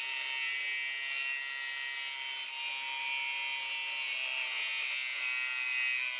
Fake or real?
real